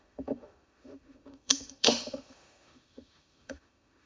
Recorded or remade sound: remade